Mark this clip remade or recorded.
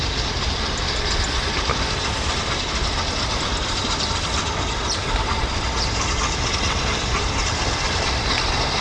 recorded